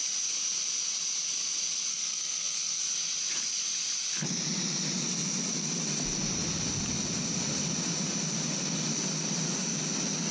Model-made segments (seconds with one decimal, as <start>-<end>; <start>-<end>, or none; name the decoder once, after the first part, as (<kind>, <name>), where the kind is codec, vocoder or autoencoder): 1.9-2.8 (codec, SNAC)